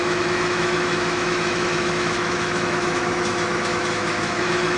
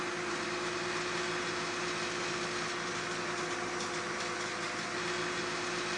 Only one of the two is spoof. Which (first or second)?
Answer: first